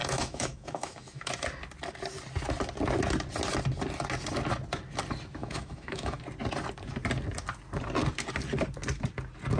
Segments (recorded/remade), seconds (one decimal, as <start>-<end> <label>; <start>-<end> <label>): 0.0-1.3 remade; 1.3-5.4 recorded; 5.4-6.2 remade; 6.2-9.6 recorded